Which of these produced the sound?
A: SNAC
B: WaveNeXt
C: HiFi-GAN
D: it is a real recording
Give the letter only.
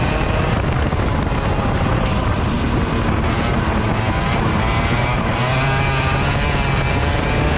D